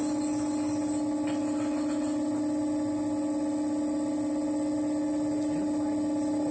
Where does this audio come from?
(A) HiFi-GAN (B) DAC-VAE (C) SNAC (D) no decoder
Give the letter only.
D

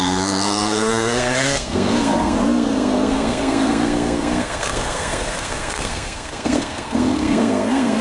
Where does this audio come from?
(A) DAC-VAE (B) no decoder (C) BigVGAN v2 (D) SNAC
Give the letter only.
D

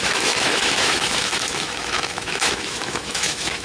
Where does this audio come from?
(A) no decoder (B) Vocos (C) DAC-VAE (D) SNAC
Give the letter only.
C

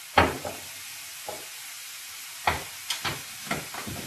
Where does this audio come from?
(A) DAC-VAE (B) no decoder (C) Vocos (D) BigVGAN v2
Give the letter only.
B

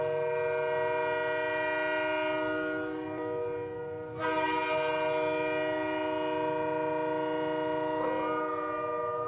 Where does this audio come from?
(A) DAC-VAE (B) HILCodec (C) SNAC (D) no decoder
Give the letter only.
D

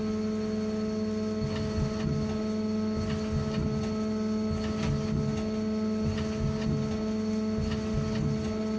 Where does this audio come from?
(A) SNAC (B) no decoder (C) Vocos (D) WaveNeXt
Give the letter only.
B